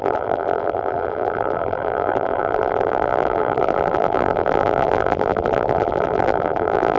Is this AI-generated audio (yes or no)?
yes